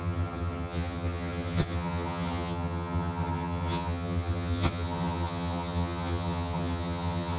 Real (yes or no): no